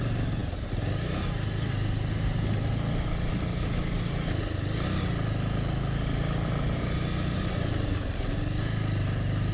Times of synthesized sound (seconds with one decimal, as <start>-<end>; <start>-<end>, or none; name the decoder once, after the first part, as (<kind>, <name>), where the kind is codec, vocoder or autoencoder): none